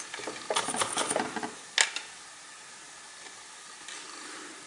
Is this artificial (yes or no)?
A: no